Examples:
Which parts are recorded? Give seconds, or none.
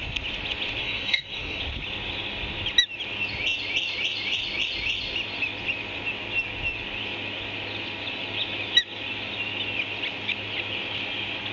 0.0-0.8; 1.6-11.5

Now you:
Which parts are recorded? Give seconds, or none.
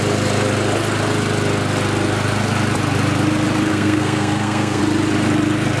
0.0-3.7; 4.8-5.8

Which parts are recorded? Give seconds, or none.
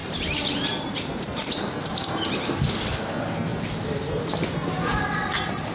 2.0-3.5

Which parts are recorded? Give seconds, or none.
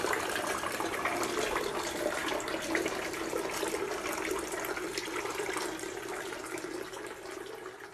0.0-7.9